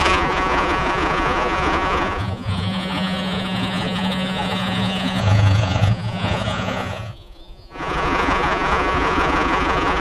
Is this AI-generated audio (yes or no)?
yes